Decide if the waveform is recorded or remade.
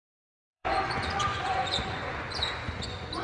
remade